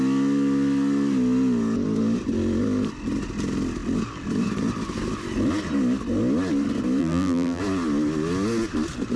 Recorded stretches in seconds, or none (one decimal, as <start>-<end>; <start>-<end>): 0.0-7.0; 7.6-9.2